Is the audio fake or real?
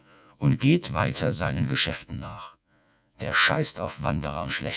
fake